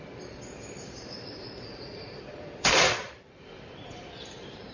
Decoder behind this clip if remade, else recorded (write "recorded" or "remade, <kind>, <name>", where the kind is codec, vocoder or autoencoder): remade, vocoder, BigVGAN v2